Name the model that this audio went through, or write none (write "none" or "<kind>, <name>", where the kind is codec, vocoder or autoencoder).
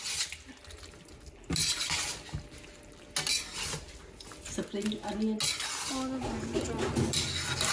none